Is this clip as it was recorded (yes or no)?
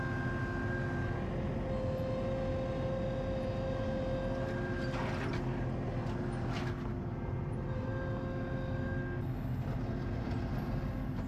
yes